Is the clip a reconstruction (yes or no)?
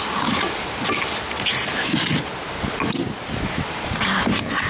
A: yes